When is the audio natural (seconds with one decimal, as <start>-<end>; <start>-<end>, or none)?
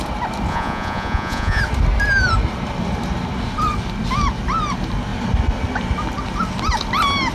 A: 0.0-0.5; 1.6-7.3